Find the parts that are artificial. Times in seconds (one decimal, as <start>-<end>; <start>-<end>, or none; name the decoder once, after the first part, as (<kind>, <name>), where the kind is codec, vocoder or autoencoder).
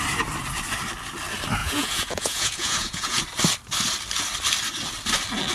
1.6-3.2 (vocoder, Vocos)